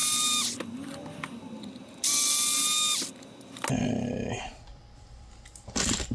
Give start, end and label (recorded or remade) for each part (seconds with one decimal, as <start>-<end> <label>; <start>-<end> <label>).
0.0-4.5 recorded; 4.5-5.2 remade; 5.2-6.1 recorded